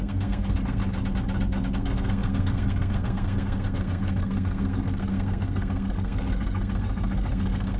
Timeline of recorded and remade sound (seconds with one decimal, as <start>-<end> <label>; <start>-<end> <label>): 0.0-0.8 remade; 0.8-1.7 recorded; 1.7-7.8 remade

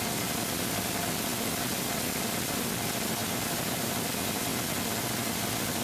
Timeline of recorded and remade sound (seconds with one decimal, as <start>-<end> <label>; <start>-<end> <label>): 0.0-3.2 recorded; 3.2-3.9 remade; 3.9-5.8 recorded

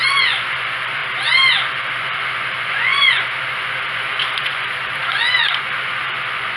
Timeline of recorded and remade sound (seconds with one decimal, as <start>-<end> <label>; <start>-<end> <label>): 0.0-1.0 remade; 1.0-1.7 recorded; 1.7-6.6 remade

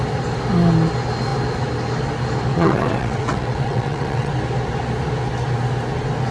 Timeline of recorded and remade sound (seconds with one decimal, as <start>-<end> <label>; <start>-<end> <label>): 0.0-2.5 recorded; 2.5-4.3 remade; 4.3-6.3 recorded

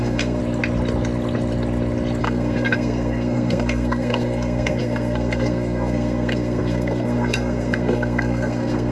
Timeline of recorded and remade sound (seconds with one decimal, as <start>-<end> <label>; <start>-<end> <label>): 0.0-0.4 remade; 0.4-2.2 recorded; 2.2-8.9 remade